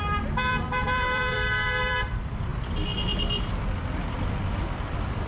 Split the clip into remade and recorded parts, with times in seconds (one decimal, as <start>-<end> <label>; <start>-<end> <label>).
0.0-2.5 remade; 2.5-3.6 recorded; 3.6-5.3 remade